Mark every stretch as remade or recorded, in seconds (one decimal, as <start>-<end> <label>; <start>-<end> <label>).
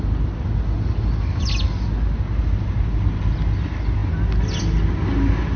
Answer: 0.0-5.6 recorded